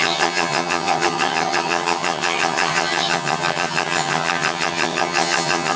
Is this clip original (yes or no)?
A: no